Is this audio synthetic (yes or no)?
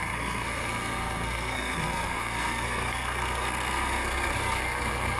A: yes